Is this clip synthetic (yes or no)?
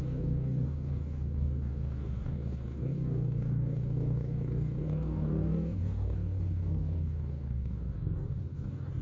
yes